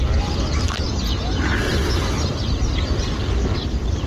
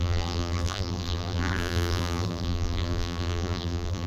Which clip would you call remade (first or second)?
second